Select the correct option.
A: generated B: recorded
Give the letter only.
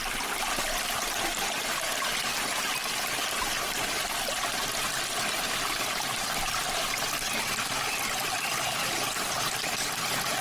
B